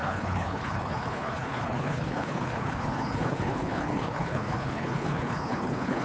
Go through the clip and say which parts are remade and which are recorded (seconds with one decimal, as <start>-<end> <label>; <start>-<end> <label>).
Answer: 0.0-6.0 remade